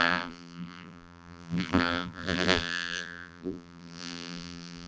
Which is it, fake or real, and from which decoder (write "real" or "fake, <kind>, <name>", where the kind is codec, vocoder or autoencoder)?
fake, vocoder, BigVGAN v2